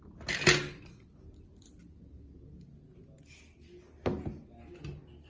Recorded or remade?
recorded